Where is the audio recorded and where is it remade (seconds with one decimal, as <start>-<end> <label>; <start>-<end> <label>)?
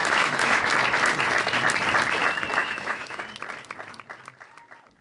0.0-0.7 remade; 0.7-2.6 recorded; 2.6-3.2 remade; 3.2-5.0 recorded